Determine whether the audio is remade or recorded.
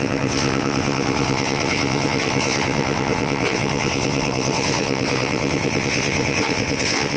remade